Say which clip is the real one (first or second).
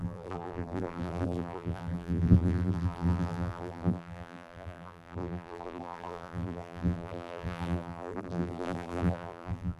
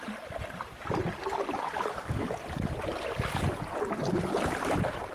second